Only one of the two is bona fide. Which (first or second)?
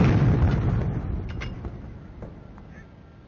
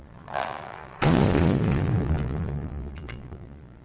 first